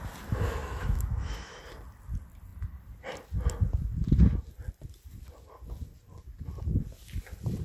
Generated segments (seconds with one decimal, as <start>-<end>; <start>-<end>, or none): 0.6-1.6

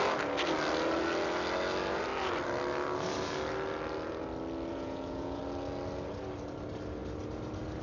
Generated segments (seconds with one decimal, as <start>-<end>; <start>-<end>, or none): 4.7-5.4

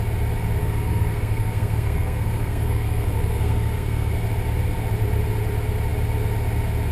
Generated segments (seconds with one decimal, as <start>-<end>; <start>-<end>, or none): 0.6-4.1

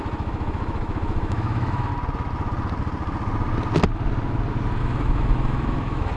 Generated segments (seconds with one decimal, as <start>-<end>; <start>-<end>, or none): 0.0-1.9; 4.8-6.2

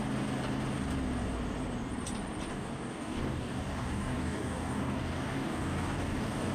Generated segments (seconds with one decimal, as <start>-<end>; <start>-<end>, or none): 2.5-6.5

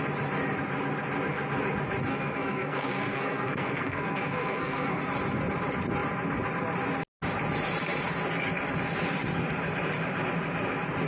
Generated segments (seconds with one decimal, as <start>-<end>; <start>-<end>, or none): 2.1-5.0

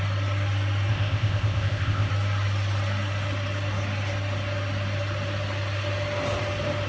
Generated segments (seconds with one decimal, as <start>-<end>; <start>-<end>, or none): 0.9-2.1

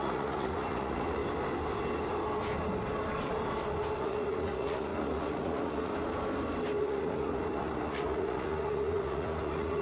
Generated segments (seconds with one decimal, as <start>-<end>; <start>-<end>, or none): 0.0-1.2; 4.0-5.9; 6.8-9.8